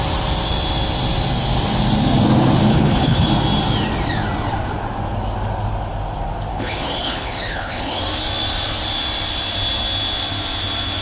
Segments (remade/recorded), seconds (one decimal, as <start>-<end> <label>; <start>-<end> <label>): 0.0-2.7 recorded; 2.7-3.3 remade; 3.3-6.5 recorded; 6.5-8.0 remade; 8.0-11.0 recorded

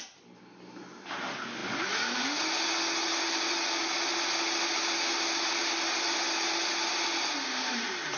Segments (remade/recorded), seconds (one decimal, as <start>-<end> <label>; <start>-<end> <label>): 0.0-8.2 recorded

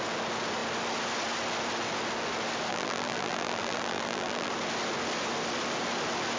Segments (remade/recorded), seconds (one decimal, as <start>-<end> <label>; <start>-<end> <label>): 0.0-2.7 recorded; 2.7-4.5 remade; 4.5-6.4 recorded

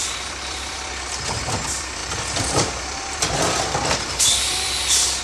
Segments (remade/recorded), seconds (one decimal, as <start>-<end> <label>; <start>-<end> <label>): 0.0-5.2 remade

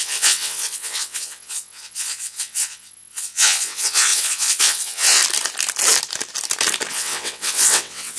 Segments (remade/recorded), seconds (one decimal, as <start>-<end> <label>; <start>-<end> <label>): 0.0-5.2 remade; 5.2-6.9 recorded; 6.9-8.2 remade

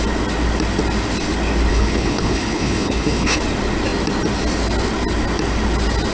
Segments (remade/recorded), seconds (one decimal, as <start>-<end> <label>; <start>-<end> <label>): 0.0-1.7 recorded; 1.7-3.4 remade; 3.4-6.1 recorded

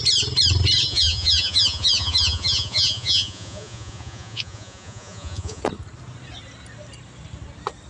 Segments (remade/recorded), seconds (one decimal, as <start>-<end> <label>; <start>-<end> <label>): 0.0-0.9 recorded; 0.9-5.6 remade; 5.6-7.9 recorded